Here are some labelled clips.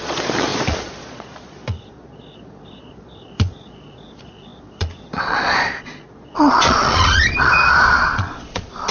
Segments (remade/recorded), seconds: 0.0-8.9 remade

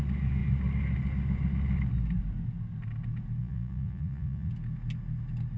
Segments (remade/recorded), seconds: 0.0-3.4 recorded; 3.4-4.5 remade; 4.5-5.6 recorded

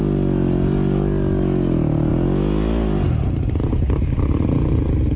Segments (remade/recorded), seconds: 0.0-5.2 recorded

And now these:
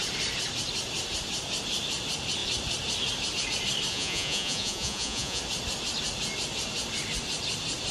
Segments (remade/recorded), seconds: 0.0-3.9 recorded; 3.9-5.4 remade; 5.4-7.9 recorded

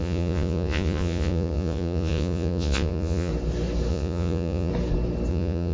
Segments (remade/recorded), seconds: 0.0-3.3 remade; 3.3-3.9 recorded; 3.9-4.7 remade; 4.7-5.3 recorded; 5.3-5.7 remade

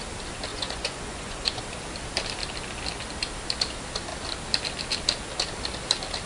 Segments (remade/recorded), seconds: 0.0-0.5 recorded; 0.5-1.6 remade; 1.6-6.3 recorded

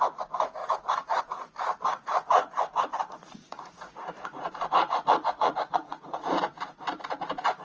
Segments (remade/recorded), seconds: 0.0-0.6 recorded; 0.6-1.2 remade; 1.2-2.0 recorded; 2.0-6.3 remade; 6.3-7.6 recorded